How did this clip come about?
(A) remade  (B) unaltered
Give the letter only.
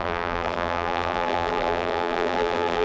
A